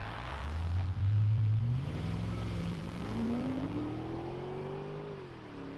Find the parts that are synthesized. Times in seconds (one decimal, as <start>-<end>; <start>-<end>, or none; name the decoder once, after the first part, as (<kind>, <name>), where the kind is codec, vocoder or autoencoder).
0.0-1.6 (vocoder, BigVGAN v2); 2.6-3.8